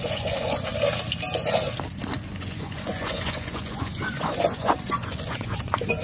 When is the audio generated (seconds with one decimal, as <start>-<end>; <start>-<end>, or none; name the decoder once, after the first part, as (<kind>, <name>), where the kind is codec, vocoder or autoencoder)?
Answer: 0.0-0.7 (vocoder, Vocos); 2.3-6.0